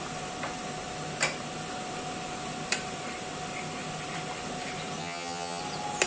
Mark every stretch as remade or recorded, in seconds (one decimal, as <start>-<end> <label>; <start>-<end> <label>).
0.0-5.0 recorded; 5.0-5.6 remade; 5.6-6.1 recorded